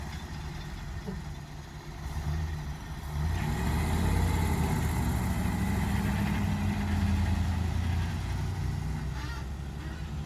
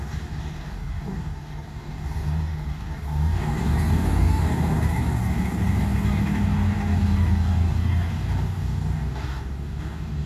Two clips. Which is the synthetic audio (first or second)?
second